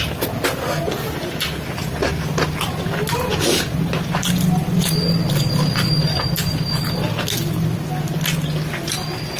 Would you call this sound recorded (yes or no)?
yes